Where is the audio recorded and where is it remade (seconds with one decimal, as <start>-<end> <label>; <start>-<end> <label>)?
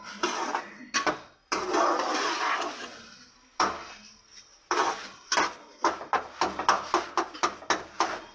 0.0-8.3 recorded